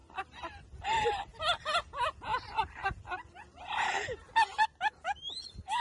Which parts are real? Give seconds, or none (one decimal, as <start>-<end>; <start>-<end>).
1.2-2.3